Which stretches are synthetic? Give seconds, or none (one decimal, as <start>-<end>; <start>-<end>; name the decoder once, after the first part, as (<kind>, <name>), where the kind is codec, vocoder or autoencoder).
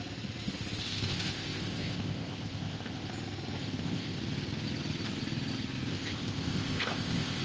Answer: 0.8-3.1 (codec, ZipCodec); 3.6-4.2; 5.9-7.4